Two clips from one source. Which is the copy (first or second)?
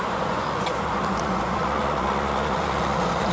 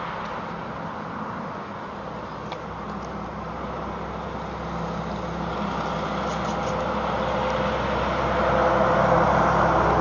first